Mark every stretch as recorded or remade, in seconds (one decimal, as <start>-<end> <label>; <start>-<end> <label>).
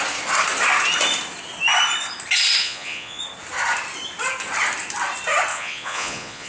0.0-2.6 recorded; 2.6-3.2 remade; 3.2-5.5 recorded; 5.5-6.5 remade